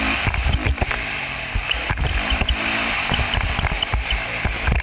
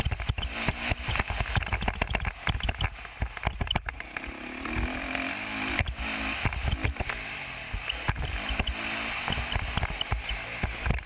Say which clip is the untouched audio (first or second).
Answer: second